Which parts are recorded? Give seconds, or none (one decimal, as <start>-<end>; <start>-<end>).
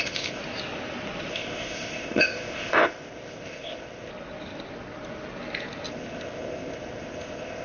0.4-1.3; 4.1-5.9